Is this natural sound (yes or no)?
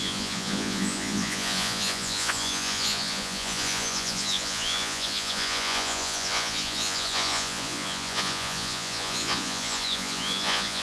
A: no